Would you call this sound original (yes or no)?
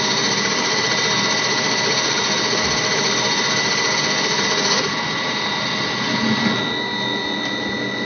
yes